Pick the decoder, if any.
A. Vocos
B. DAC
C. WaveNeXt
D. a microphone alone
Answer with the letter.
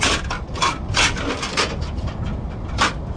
D